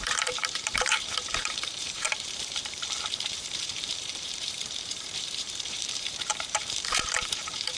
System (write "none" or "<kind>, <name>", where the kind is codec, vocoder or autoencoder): vocoder, BigVGAN v2